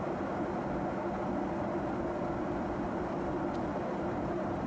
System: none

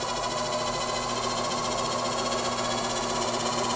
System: none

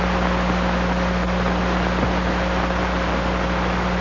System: none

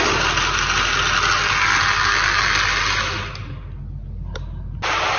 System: none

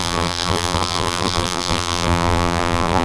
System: vocoder, BigVGAN v2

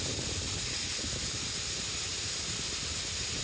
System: none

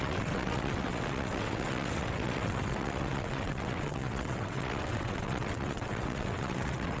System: vocoder, WaveNeXt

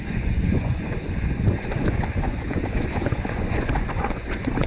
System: vocoder, Vocos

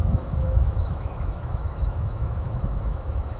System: autoencoder, DAC-VAE